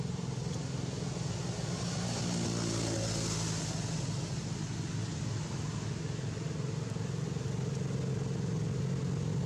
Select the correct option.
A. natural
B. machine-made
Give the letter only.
A